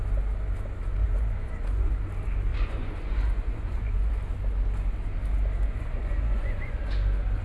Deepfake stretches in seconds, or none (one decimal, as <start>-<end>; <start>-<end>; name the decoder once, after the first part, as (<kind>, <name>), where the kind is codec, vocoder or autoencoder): 1.0-1.9 (vocoder, Vocos); 2.5-4.1; 5.6-6.8